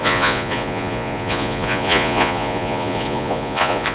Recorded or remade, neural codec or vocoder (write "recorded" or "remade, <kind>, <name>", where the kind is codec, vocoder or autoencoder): remade, vocoder, Vocos